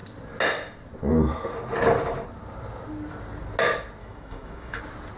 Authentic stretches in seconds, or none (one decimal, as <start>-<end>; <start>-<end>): 0.0-4.0; 4.8-5.2